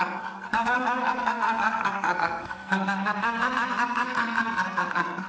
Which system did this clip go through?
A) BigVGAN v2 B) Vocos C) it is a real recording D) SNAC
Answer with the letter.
D